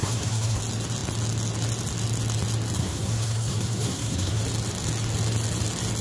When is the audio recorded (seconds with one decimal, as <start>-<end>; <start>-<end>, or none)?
0.6-2.8; 4.4-6.0